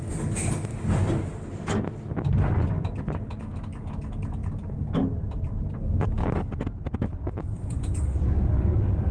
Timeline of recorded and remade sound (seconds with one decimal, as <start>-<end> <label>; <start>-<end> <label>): 0.0-3.4 recorded; 3.4-5.0 remade; 5.0-5.8 recorded; 5.8-9.1 remade